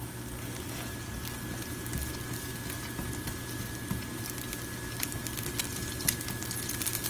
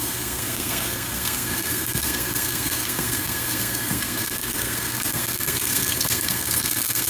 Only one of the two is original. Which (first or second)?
first